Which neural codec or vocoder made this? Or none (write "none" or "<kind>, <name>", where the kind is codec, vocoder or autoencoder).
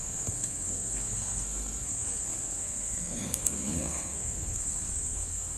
codec, SNAC